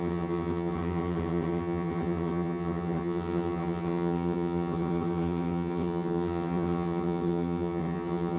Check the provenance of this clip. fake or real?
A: fake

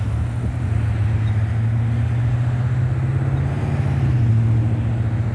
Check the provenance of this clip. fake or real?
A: real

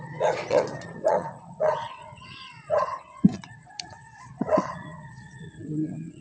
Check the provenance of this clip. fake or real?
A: fake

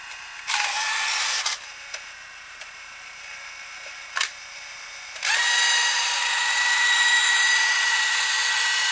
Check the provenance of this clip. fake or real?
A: fake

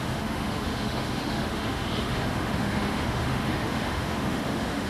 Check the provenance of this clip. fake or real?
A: fake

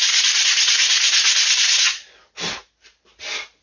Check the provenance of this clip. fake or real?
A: real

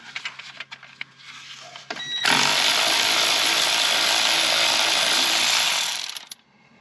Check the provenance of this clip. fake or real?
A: real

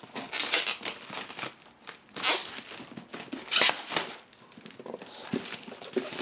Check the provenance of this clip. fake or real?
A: real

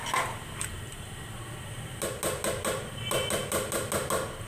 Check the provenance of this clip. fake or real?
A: real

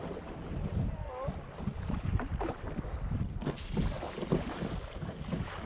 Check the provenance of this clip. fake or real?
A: real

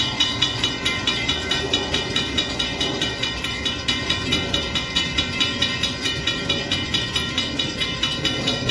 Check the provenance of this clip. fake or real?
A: fake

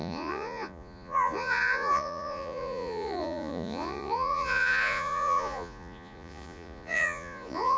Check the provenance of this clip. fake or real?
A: fake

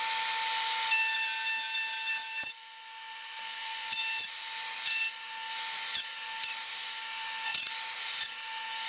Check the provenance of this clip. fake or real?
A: real